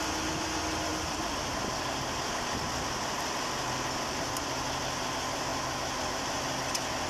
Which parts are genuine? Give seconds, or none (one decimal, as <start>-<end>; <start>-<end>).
0.0-7.1